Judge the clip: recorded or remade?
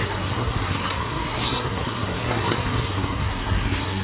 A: remade